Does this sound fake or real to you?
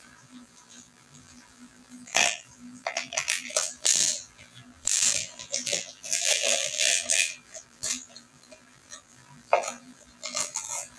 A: fake